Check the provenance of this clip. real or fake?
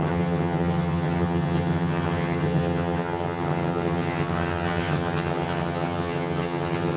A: fake